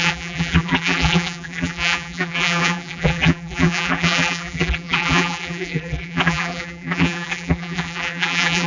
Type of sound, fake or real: fake